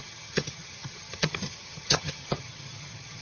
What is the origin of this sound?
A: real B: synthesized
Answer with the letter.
B